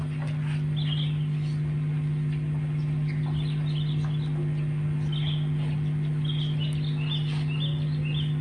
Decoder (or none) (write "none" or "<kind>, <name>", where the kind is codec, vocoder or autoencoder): none